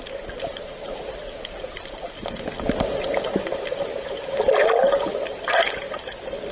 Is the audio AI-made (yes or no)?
no